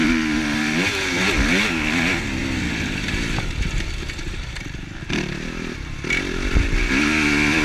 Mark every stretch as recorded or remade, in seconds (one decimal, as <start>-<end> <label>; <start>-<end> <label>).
0.0-2.4 recorded; 2.4-6.2 remade; 6.2-7.6 recorded